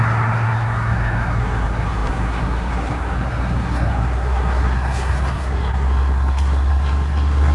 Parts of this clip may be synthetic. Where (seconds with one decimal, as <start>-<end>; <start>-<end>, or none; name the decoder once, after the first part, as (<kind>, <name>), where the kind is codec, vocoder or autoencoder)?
0.0-7.5 (codec, SNAC)